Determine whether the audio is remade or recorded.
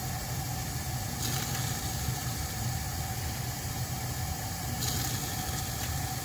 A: recorded